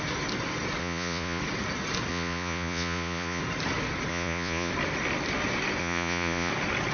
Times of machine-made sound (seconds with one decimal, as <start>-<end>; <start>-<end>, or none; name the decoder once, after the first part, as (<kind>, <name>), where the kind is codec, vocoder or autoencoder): 0.8-1.4 (vocoder, Vocos); 2.1-3.4; 4.1-4.7; 5.8-6.5